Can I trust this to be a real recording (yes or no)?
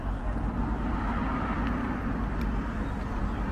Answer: yes